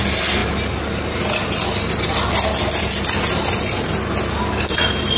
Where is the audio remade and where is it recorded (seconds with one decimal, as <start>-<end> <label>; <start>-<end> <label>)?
0.0-5.2 recorded